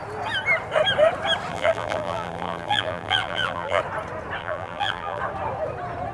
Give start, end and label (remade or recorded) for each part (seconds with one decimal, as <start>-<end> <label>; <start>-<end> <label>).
0.0-1.5 recorded; 1.5-3.8 remade; 3.8-4.4 recorded; 4.4-5.2 remade; 5.2-6.1 recorded